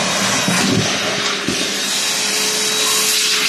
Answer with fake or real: real